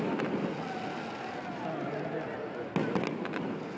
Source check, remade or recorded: recorded